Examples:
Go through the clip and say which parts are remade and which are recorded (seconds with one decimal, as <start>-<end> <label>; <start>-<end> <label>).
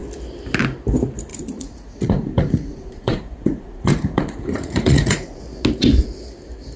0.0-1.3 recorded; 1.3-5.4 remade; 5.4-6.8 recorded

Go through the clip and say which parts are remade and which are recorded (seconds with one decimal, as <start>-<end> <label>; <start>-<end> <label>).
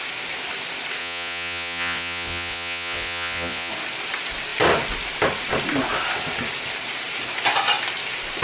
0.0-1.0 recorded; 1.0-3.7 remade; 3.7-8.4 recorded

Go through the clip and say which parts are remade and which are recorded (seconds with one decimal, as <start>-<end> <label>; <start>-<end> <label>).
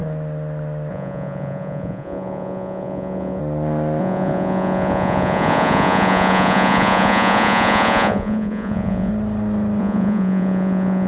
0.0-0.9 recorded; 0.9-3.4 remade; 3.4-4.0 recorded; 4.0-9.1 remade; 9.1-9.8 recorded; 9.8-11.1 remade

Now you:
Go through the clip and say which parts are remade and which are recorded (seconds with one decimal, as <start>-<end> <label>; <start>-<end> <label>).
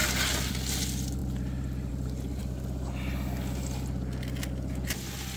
0.0-5.4 recorded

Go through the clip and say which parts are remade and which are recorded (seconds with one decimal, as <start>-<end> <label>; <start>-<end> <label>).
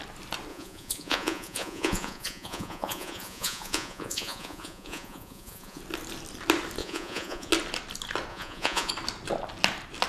0.0-0.5 recorded; 0.5-5.8 remade; 5.8-6.8 recorded; 6.8-7.5 remade; 7.5-8.3 recorded; 8.3-8.9 remade; 8.9-10.1 recorded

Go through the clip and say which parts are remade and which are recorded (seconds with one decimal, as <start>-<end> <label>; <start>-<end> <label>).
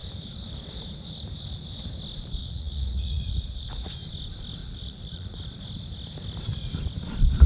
0.0-2.4 recorded; 2.4-3.9 remade; 3.9-4.6 recorded; 4.6-5.4 remade; 5.4-7.5 recorded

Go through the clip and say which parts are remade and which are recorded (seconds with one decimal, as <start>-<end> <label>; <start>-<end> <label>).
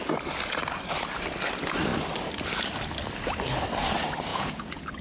0.0-4.3 recorded; 4.3-5.0 remade